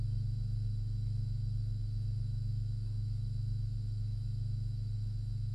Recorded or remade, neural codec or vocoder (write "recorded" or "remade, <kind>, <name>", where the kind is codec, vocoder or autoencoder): remade, autoencoder, DAC-VAE